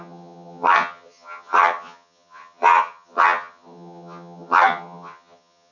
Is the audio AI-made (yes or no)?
yes